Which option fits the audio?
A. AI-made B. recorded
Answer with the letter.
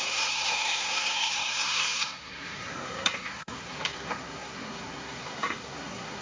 A